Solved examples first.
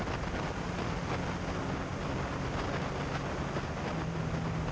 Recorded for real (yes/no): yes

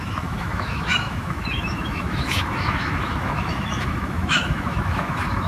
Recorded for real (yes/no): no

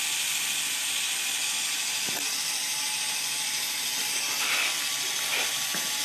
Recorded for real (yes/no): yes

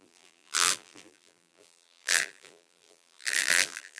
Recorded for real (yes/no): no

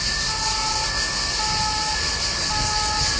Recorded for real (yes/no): yes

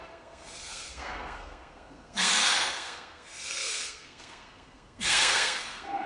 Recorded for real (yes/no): no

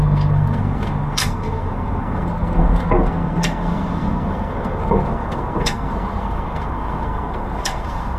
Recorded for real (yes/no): no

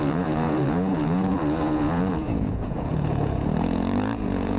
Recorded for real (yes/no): no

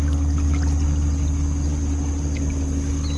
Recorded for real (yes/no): yes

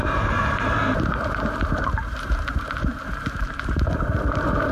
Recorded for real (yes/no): no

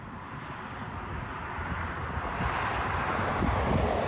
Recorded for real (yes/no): yes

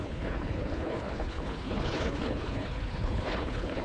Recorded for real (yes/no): no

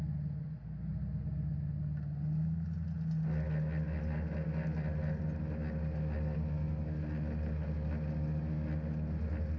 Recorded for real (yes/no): yes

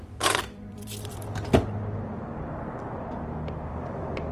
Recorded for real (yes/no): no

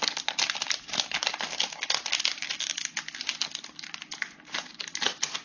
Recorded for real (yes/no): yes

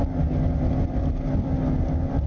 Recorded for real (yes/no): yes